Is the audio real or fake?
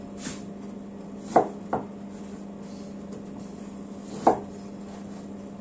real